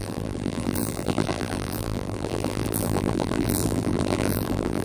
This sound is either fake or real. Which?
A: fake